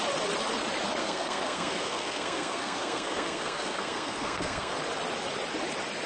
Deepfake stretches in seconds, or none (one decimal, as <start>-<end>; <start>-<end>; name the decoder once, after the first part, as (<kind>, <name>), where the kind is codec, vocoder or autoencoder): 1.0-4.7 (codec, SNAC)

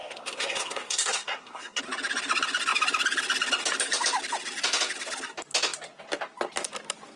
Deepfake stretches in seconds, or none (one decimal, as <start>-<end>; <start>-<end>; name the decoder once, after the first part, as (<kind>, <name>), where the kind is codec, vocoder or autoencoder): 0.0-1.8 (codec, SNAC)

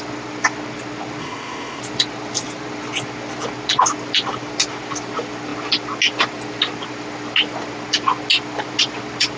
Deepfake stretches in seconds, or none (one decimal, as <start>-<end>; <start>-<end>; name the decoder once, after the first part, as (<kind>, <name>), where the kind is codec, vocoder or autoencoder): 1.2-1.8 (codec, ZipCodec)

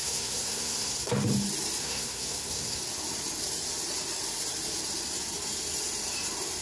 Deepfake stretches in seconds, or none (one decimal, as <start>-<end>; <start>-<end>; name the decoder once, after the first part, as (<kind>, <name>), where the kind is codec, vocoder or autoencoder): 0.0-1.1 (codec, SNAC); 1.8-2.8

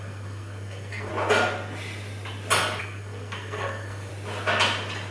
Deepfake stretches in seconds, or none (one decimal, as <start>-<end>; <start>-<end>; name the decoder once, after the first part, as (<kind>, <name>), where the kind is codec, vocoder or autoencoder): 0.0-1.1 (codec, SNAC); 2.8-4.1

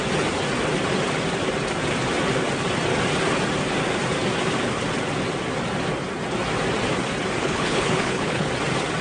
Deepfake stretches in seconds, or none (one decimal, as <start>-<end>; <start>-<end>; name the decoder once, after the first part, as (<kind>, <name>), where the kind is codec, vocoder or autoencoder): 7.4-8.5 (codec, HILCodec)

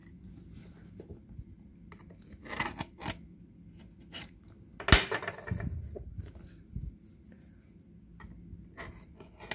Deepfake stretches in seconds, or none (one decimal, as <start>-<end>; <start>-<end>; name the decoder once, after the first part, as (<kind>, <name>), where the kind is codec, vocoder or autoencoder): none